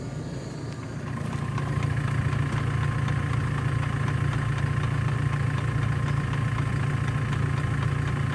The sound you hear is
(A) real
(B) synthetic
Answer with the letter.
A